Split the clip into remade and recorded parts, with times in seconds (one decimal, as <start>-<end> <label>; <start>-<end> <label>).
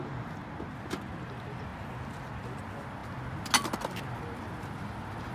0.0-5.3 recorded